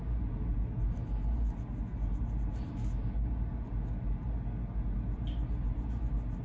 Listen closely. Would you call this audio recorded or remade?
recorded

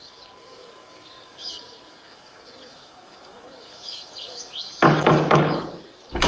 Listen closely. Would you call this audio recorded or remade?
remade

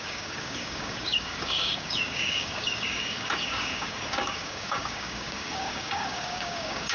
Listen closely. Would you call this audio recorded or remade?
remade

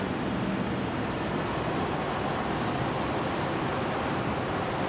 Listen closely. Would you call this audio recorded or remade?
recorded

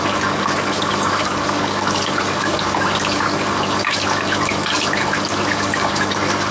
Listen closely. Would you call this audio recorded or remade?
remade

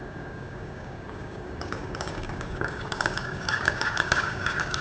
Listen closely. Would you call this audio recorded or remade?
remade